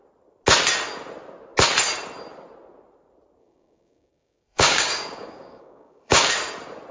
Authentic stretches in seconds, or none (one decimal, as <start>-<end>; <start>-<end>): 0.0-3.4; 6.3-6.9